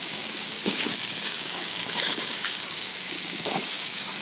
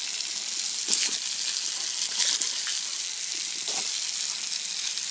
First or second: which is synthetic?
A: first